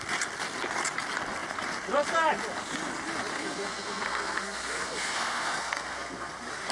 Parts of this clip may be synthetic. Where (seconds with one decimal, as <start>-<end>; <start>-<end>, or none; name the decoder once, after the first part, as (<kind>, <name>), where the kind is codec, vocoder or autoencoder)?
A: 3.3-6.3 (codec, SNAC)